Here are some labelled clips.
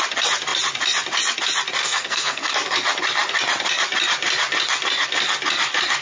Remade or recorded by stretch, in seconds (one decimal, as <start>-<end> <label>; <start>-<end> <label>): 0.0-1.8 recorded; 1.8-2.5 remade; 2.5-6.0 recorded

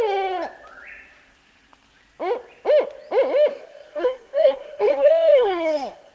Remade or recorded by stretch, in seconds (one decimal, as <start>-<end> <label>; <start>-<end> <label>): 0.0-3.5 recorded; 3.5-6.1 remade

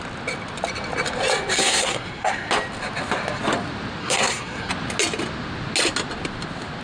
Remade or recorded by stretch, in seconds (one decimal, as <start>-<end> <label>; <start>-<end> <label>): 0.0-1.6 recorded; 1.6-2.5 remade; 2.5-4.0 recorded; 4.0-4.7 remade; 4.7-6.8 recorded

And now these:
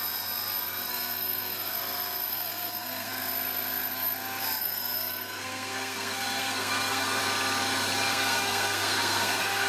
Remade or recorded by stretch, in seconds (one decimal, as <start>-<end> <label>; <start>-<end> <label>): 0.0-0.9 recorded; 0.9-1.7 remade; 1.7-2.3 recorded; 2.3-3.1 remade; 3.1-4.6 recorded; 4.6-7.2 remade; 7.2-8.1 recorded; 8.1-9.7 remade

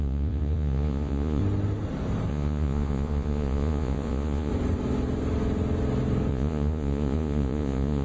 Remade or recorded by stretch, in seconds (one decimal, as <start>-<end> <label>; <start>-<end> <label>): 0.0-1.4 remade; 1.4-2.3 recorded; 2.3-4.5 remade; 4.5-6.3 recorded; 6.3-8.0 remade

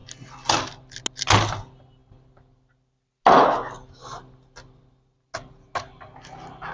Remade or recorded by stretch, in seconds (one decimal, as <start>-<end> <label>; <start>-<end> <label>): 0.0-6.7 recorded

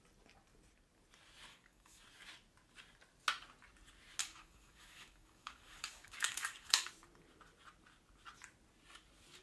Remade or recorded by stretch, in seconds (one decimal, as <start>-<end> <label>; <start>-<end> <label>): 0.0-1.5 recorded; 1.5-2.0 remade; 2.0-4.2 recorded; 4.2-6.9 remade; 6.9-9.4 recorded

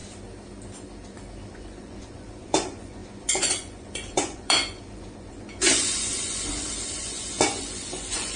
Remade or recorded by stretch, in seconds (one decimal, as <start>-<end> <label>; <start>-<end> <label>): 0.0-1.5 recorded; 1.5-8.4 remade